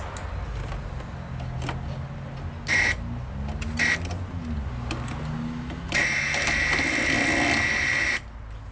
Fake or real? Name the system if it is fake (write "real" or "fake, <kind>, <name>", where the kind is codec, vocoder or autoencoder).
real